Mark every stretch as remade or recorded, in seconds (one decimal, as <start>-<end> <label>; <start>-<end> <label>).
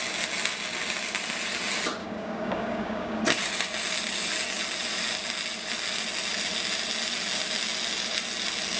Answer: 0.0-2.0 recorded; 2.0-3.2 remade; 3.2-8.8 recorded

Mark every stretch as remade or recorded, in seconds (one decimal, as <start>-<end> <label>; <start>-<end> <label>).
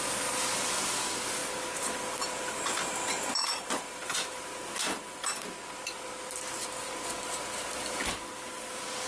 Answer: 0.0-9.1 recorded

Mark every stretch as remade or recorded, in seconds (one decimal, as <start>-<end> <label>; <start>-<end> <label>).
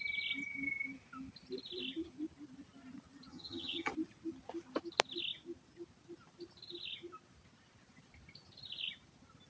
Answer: 0.0-3.3 recorded; 3.3-3.9 remade; 3.9-9.5 recorded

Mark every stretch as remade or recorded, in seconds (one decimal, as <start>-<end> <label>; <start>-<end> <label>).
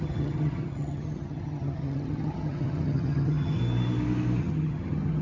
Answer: 0.0-3.6 remade; 3.6-4.4 recorded; 4.4-5.2 remade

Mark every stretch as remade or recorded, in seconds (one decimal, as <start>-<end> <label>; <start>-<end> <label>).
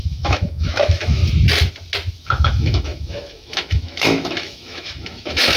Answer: 0.0-1.2 remade; 1.2-2.2 recorded; 2.2-5.6 remade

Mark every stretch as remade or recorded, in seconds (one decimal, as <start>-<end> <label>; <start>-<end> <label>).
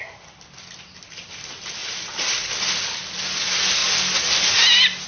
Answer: 0.0-1.8 recorded; 1.8-2.4 remade; 2.4-5.1 recorded